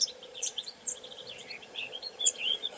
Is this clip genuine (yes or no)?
no